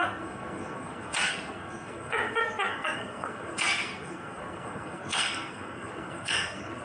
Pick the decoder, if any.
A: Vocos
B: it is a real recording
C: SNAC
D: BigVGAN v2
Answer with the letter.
C